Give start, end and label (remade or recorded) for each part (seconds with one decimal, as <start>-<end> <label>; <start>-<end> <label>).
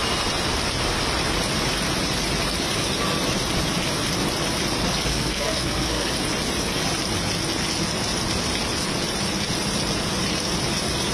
0.0-5.1 recorded; 5.1-6.1 remade; 6.1-11.1 recorded